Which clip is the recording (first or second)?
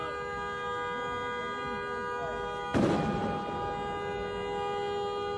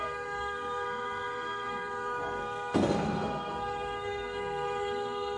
first